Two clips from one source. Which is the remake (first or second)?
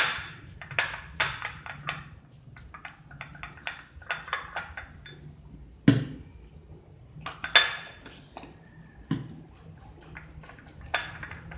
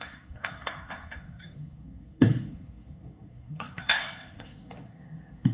second